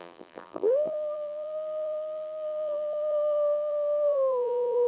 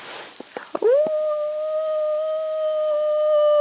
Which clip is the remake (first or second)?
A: first